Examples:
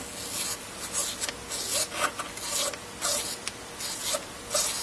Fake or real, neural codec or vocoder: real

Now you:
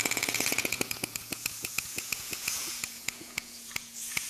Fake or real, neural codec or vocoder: fake, vocoder, Vocos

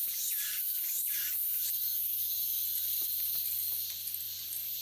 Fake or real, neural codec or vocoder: real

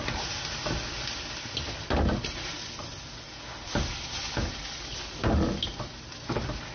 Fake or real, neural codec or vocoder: real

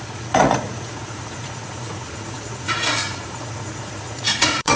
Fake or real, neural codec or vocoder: fake, vocoder, Vocos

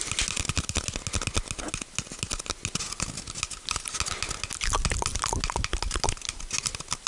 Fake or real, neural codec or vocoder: real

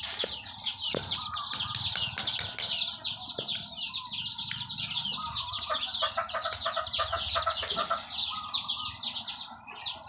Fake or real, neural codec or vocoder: real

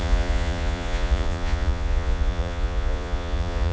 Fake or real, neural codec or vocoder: fake, vocoder, Vocos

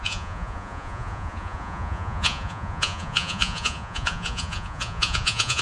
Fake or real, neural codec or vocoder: fake, vocoder, Vocos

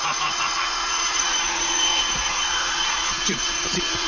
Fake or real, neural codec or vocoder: fake, vocoder, Vocos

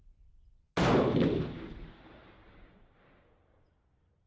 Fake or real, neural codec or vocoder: real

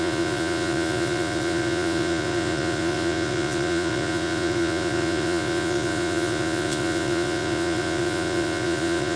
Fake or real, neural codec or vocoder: fake, vocoder, Vocos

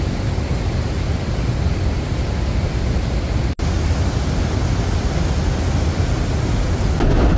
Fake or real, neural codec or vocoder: real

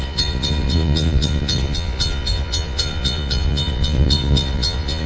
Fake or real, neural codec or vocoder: fake, vocoder, Vocos